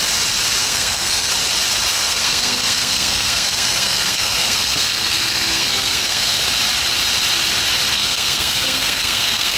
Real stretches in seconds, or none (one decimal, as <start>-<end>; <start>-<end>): 0.0-0.6; 1.3-1.9; 6.4-7.9